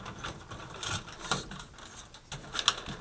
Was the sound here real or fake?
real